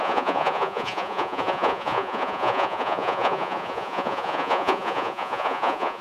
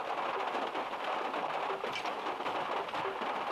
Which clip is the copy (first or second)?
first